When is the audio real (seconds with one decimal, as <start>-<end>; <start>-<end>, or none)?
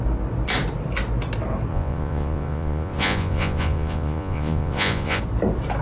0.0-1.7; 5.2-5.8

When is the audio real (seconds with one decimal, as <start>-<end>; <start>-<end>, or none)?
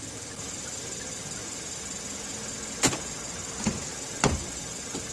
0.0-5.1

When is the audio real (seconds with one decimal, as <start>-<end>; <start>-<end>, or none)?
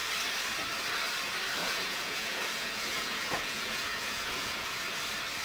0.0-1.6; 4.8-5.4